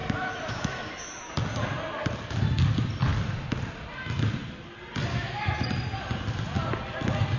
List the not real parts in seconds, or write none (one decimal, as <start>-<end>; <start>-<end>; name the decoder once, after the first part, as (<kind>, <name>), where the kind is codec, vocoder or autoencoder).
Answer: 0.0-1.3 (autoencoder, DAC-VAE); 5.1-5.6

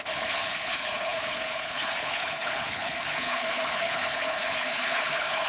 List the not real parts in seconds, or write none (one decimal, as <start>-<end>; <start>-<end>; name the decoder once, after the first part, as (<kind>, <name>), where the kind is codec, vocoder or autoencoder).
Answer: 0.0-5.5 (codec, HILCodec)

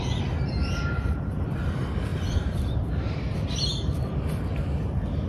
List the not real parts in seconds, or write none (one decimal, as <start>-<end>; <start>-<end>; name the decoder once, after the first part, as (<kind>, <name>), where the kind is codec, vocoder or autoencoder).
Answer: none

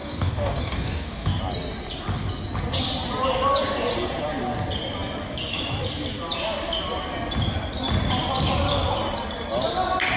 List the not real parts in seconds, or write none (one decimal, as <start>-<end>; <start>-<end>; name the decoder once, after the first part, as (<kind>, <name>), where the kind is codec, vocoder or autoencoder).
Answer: 0.0-1.4 (codec, DAC)

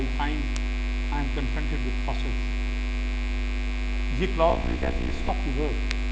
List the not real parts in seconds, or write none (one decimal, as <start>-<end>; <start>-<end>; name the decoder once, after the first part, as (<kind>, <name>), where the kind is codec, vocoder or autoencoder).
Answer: 4.5-5.3 (vocoder, Vocos)

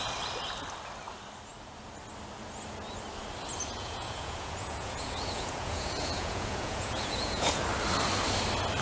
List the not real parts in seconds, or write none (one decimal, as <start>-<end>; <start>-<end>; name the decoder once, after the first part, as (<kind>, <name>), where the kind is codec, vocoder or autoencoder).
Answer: 3.8-7.6 (vocoder, Vocos)

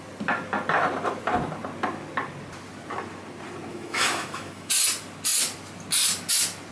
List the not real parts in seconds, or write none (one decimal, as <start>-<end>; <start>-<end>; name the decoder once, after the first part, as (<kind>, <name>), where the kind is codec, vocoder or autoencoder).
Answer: 3.7-4.7 (autoencoder, DAC-VAE)

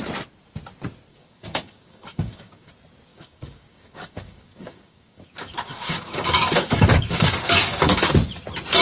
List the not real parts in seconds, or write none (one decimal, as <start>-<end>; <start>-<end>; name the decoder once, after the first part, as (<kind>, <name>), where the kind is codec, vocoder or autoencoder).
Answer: 1.1-2.7 (codec, DAC); 3.1-8.1